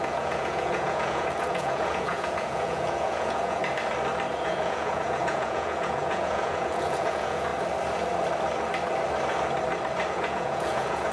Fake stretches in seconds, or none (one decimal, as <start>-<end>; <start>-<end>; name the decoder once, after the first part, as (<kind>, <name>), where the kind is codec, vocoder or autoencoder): 0.0-3.6 (vocoder, Vocos); 4.4-7.5; 10.1-11.1